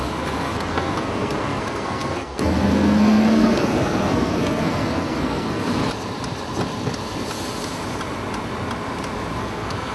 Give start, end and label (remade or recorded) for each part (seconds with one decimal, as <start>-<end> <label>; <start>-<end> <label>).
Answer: 0.0-5.8 remade; 5.8-9.4 recorded; 9.4-9.9 remade